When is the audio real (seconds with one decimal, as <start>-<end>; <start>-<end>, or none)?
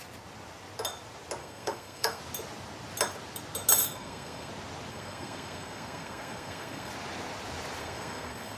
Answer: 0.0-1.4; 2.2-3.8; 4.5-4.9; 6.9-7.8